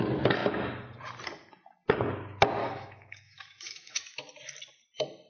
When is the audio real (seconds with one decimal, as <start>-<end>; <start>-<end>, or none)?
0.0-2.6; 4.0-5.3